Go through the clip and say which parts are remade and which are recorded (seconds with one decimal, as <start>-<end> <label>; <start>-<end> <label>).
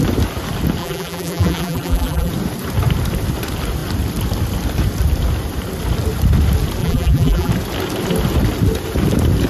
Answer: 0.0-0.8 recorded; 0.8-2.3 remade; 2.3-6.8 recorded; 6.8-7.5 remade; 7.5-9.5 recorded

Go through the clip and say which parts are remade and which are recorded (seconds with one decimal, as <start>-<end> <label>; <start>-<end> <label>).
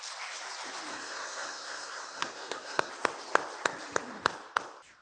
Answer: 0.0-0.9 recorded; 0.9-2.9 remade; 2.9-5.0 recorded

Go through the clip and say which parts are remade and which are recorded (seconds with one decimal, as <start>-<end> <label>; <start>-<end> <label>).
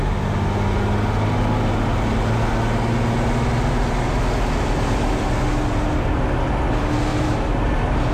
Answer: 0.0-7.1 recorded; 7.1-8.1 remade